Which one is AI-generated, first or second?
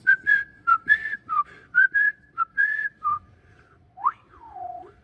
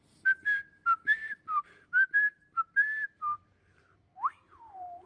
first